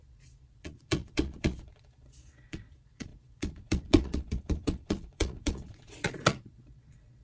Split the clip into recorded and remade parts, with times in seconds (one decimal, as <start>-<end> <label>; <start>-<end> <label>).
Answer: 0.0-7.2 remade